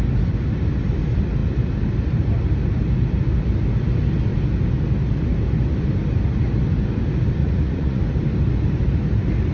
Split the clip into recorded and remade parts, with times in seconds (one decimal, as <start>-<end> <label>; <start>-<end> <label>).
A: 0.0-7.4 recorded; 7.4-8.0 remade; 8.0-9.5 recorded